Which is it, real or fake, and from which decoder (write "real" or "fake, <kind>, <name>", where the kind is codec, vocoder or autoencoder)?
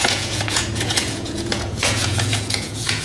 fake, vocoder, Vocos